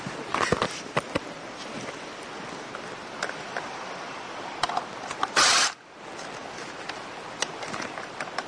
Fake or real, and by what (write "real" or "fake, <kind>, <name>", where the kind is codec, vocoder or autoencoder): real